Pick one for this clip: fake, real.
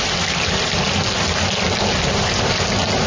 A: real